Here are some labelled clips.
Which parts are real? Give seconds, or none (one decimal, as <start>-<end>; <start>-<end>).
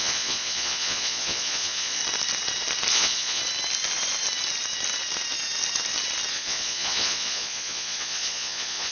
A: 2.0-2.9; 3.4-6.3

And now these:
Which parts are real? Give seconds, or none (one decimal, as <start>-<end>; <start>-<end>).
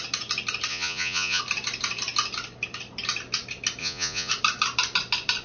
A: 0.0-0.7; 1.4-3.8; 4.3-5.4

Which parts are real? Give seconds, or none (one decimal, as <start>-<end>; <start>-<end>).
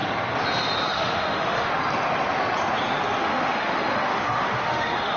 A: 0.0-0.9; 1.7-3.2